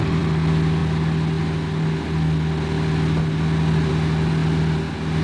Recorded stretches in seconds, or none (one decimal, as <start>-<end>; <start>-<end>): 0.0-5.2

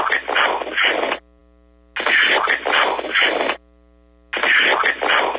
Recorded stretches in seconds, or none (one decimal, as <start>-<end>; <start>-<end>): 0.0-5.4

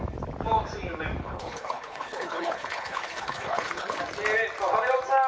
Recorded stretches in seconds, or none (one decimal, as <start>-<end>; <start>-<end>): 0.0-1.2; 4.0-5.3

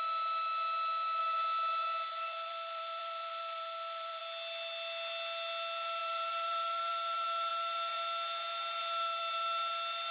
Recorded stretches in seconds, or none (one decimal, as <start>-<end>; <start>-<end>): 0.0-1.2; 4.2-6.0; 6.9-10.1

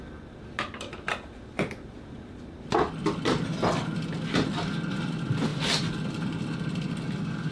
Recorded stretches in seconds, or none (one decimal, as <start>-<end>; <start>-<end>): 0.0-7.5

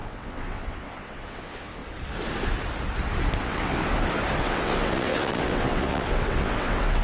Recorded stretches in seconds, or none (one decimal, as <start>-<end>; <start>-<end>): 1.8-3.4; 3.8-4.4

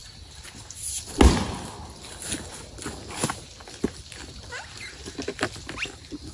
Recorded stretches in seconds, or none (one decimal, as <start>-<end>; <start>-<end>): 0.0-6.3